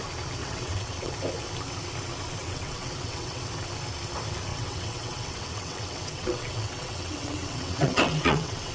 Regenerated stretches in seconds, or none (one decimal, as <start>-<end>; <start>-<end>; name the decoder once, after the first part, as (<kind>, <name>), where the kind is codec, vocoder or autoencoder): 0.4-1.1 (vocoder, WaveNeXt); 2.4-3.4; 4.5-8.7